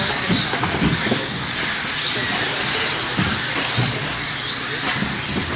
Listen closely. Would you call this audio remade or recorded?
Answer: recorded